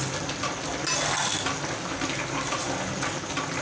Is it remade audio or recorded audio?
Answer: recorded